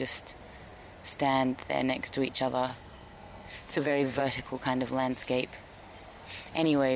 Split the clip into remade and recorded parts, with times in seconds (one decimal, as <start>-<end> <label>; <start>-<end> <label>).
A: 0.0-2.7 recorded; 2.7-4.2 remade; 4.2-7.0 recorded